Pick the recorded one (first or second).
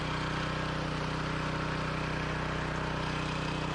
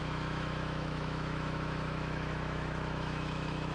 first